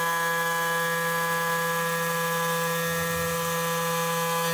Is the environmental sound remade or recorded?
recorded